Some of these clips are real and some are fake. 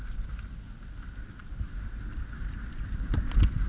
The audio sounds real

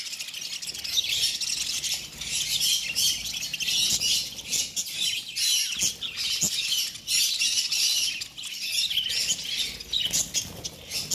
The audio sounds real